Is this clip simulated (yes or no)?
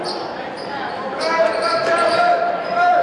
yes